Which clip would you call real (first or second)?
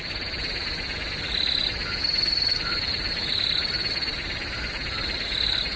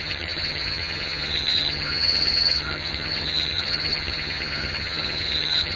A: first